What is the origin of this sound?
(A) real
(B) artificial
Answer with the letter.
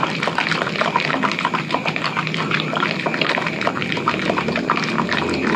B